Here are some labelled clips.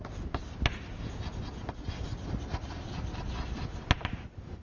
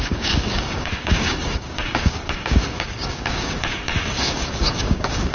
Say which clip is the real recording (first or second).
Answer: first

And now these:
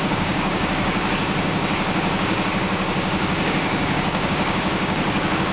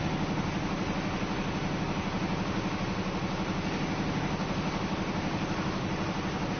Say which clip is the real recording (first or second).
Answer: second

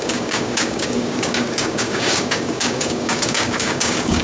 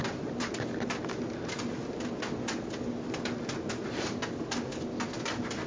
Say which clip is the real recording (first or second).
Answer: second